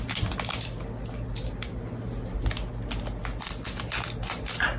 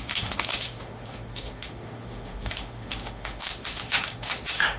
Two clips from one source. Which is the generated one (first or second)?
second